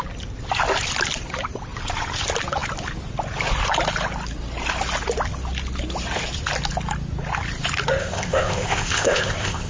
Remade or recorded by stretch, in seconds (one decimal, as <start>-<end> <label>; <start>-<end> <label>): 0.0-8.0 recorded; 8.0-9.7 remade